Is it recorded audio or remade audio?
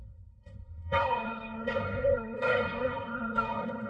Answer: remade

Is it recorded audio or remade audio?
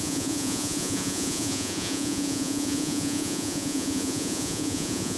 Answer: remade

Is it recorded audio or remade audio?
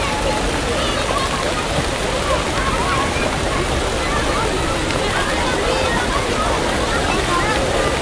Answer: recorded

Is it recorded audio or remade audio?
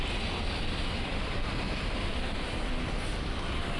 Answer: recorded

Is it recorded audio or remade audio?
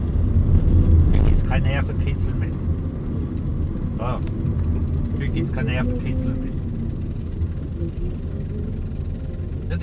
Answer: recorded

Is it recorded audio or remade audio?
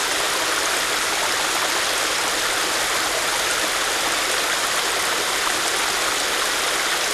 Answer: recorded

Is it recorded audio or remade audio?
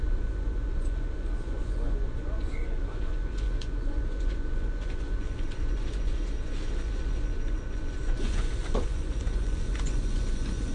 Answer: remade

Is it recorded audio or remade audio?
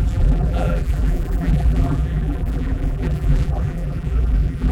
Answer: remade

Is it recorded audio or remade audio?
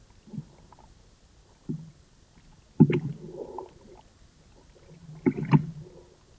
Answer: recorded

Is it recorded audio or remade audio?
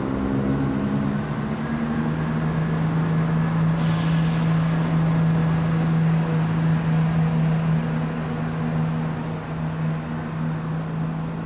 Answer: recorded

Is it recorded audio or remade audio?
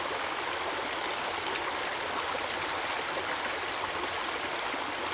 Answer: recorded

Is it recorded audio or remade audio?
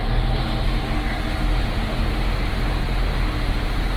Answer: recorded